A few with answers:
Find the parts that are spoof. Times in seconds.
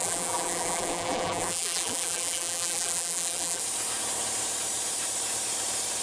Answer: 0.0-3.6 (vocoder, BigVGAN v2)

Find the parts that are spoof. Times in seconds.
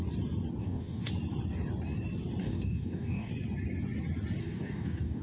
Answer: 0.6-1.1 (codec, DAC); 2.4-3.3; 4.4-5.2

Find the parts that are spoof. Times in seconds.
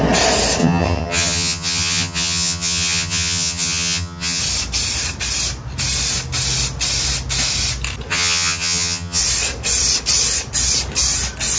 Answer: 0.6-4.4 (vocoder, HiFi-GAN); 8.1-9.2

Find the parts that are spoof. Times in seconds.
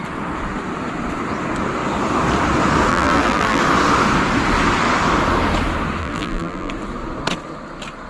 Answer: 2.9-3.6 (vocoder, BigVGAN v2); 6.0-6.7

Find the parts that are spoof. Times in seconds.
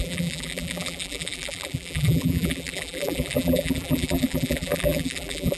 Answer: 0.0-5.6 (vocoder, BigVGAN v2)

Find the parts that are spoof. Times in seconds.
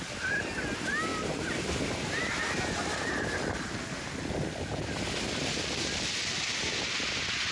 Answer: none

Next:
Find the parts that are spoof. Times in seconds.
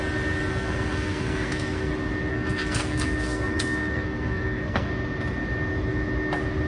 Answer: 0.5-1.9 (codec, SNAC); 2.3-4.9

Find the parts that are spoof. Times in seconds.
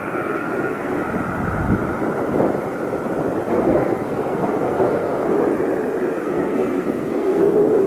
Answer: 0.0-1.0 (codec, SNAC); 3.5-5.1; 6.2-7.9